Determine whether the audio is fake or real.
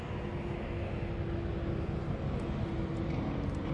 real